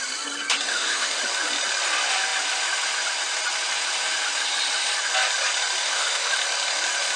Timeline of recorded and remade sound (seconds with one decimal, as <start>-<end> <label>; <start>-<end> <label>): 0.0-0.7 recorded; 0.7-1.2 remade; 1.2-5.8 recorded; 5.8-6.3 remade; 6.3-7.2 recorded